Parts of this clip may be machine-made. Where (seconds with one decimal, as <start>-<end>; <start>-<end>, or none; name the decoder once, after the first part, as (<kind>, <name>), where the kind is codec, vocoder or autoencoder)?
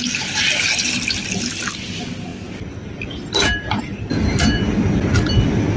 none